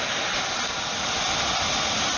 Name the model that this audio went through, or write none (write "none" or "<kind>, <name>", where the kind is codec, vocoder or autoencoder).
none